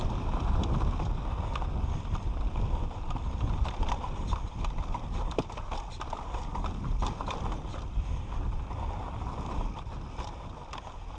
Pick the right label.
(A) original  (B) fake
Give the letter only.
B